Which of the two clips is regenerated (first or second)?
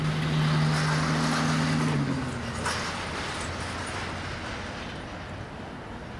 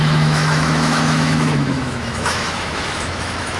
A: second